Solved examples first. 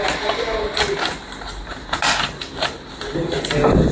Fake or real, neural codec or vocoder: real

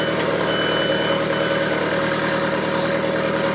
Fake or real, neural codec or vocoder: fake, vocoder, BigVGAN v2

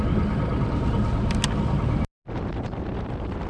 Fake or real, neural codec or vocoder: real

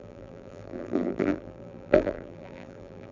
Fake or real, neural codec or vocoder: fake, vocoder, BigVGAN v2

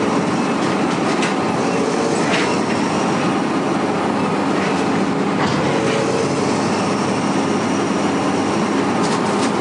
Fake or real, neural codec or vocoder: real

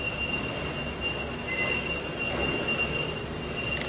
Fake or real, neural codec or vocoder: real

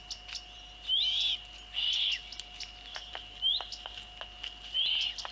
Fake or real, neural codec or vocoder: real